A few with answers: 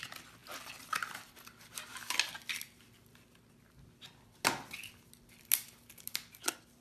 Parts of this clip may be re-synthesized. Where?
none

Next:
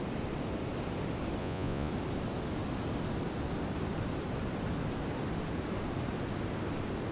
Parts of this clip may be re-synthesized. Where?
1.4-1.9 (vocoder, Vocos)

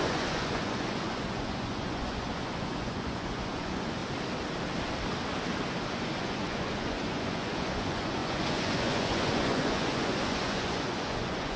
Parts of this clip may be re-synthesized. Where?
0.0-4.0 (vocoder, Vocos); 5.9-11.6

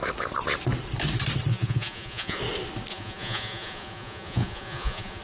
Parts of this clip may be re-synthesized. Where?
1.5-2.4 (vocoder, Vocos); 2.9-5.2

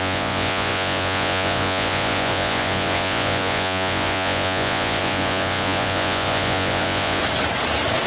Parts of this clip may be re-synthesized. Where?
0.0-7.2 (vocoder, Vocos)